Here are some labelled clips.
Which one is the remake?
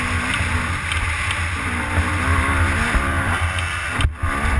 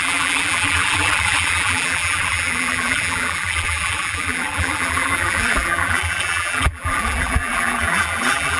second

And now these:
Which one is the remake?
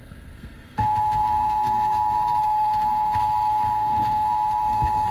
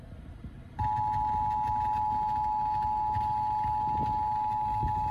first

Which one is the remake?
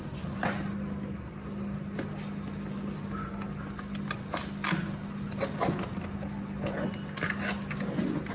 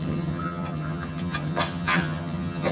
second